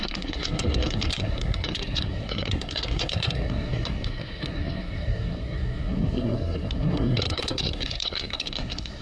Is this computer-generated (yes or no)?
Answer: yes